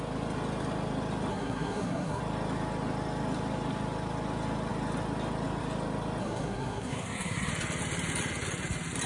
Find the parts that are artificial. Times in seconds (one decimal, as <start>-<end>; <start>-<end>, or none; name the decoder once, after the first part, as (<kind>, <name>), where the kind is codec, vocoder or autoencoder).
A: 1.3-2.2 (codec, SNAC); 6.2-7.5